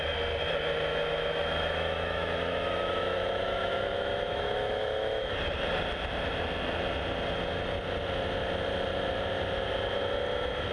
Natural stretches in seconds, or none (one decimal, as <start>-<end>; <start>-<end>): 0.0-0.9; 5.3-10.7